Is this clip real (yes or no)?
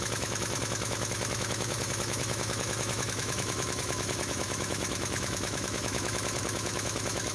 no